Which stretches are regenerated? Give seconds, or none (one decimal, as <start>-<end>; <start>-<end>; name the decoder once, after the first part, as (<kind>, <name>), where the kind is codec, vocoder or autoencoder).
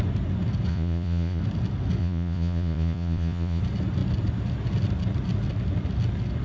0.7-1.4 (vocoder, Vocos); 2.0-3.6